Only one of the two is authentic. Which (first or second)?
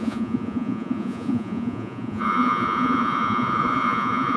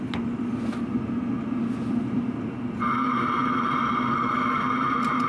second